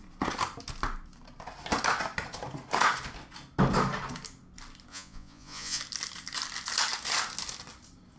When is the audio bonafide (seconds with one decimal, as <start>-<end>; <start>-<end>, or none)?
0.0-4.9; 5.8-8.2